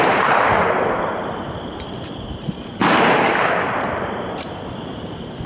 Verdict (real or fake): fake